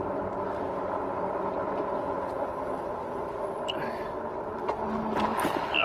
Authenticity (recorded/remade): recorded